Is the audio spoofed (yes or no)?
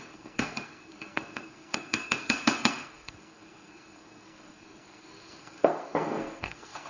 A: yes